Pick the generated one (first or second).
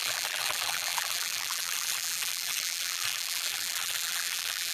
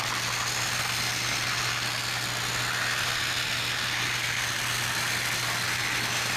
first